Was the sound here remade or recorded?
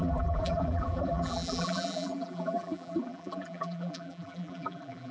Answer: remade